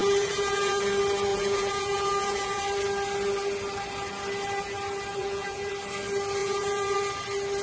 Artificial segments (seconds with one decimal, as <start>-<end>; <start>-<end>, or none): 0.0-0.8; 1.3-2.6; 5.2-5.7; 6.4-7.0